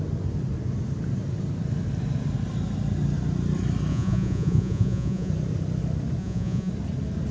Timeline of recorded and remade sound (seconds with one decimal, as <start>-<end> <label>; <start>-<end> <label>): 0.0-3.9 recorded; 3.9-5.3 remade; 5.3-6.2 recorded; 6.2-6.7 remade; 6.7-7.3 recorded